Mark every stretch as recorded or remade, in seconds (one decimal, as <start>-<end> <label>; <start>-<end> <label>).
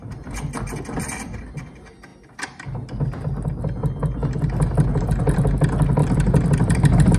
0.0-7.2 recorded